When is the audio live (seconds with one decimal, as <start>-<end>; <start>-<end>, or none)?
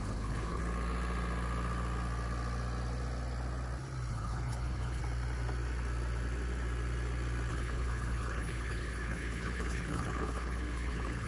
0.6-4.1; 5.0-7.5